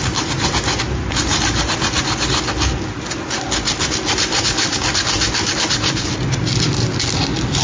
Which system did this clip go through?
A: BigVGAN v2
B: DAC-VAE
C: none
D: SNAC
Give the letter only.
C